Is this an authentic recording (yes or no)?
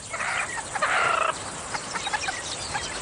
no